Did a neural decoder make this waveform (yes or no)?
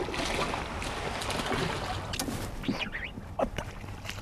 no